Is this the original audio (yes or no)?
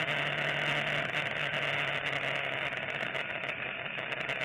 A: yes